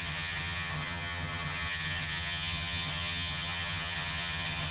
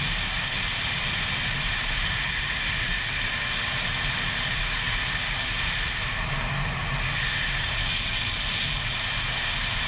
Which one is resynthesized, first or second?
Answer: first